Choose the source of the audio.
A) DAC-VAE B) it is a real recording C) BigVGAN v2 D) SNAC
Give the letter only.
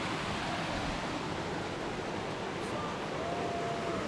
B